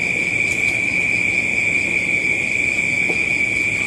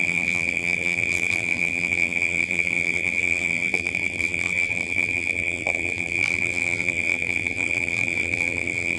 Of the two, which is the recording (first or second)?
first